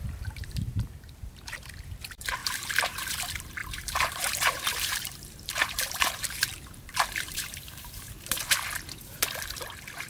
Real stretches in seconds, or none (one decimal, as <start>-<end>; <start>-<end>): 1.7-2.4; 3.1-3.6; 8.1-10.1